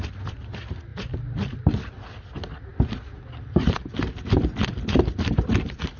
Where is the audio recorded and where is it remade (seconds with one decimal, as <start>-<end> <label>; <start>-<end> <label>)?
0.0-6.0 recorded